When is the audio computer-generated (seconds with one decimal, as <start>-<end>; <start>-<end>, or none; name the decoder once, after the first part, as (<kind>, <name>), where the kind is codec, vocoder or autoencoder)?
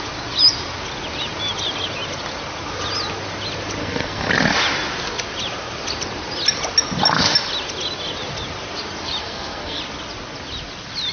3.8-4.3 (codec, SNAC); 9.2-9.8